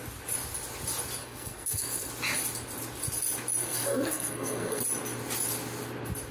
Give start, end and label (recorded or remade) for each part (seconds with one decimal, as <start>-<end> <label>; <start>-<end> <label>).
0.0-1.2 recorded; 1.2-2.1 remade; 2.1-3.6 recorded; 3.6-4.8 remade; 4.8-6.3 recorded